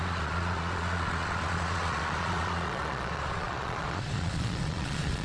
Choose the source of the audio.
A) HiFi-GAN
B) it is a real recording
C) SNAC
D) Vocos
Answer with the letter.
D